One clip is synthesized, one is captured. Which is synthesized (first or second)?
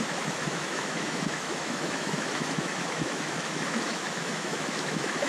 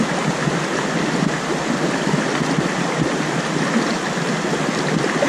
first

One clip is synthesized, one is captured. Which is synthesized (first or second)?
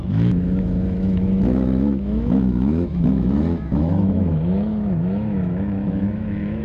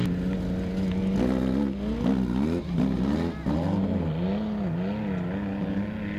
first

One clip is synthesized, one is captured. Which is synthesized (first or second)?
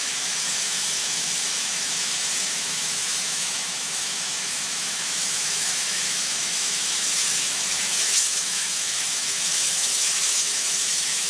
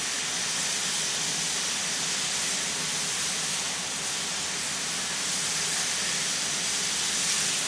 first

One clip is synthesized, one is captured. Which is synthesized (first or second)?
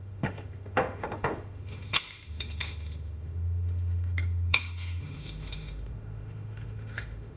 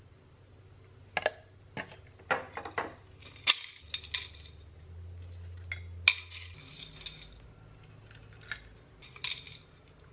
first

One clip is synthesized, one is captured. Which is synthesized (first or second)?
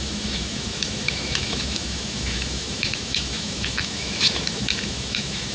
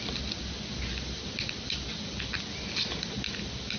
first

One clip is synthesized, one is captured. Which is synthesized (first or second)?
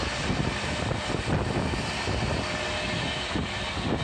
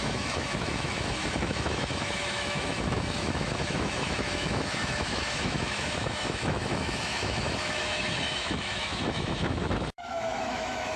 second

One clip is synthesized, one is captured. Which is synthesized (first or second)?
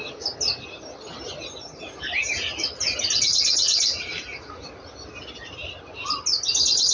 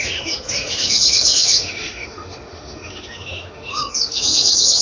second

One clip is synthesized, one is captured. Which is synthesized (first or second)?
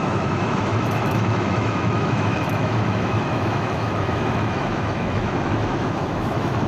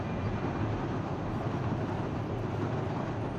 first